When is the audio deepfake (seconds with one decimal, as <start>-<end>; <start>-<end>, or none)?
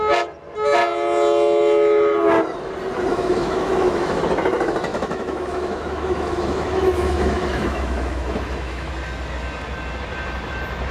3.1-4.2; 4.9-8.9